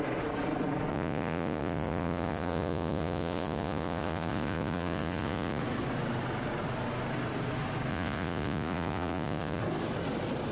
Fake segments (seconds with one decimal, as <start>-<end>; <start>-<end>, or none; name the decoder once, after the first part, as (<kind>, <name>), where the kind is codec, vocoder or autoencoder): 0.9-5.6 (vocoder, Vocos); 7.9-9.6